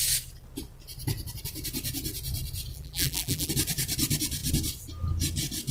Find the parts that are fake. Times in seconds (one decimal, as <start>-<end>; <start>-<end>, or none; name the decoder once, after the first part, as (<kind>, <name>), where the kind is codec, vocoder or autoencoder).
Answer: 2.7-3.5 (vocoder, BigVGAN v2)